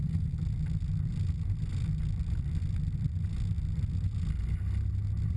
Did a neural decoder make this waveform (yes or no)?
no